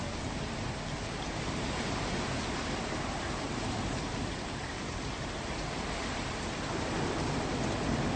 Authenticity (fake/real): real